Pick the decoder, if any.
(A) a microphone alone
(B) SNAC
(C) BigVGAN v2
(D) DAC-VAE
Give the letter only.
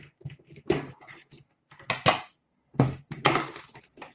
A